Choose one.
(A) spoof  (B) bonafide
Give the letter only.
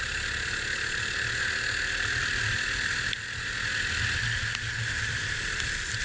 B